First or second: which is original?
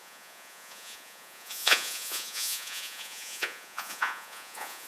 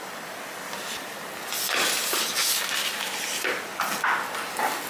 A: second